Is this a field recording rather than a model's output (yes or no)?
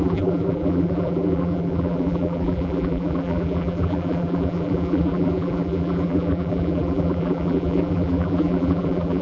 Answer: no